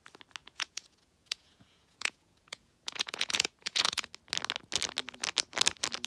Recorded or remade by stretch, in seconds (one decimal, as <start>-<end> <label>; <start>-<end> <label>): 0.0-0.4 recorded; 0.4-4.1 remade; 4.1-6.1 recorded